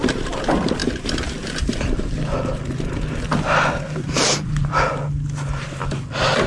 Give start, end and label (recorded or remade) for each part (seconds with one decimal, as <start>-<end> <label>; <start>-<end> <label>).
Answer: 0.0-0.8 recorded; 0.8-4.7 remade; 4.7-6.5 recorded